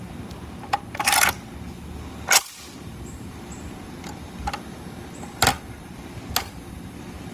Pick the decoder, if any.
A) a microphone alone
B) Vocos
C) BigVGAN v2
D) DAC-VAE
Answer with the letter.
A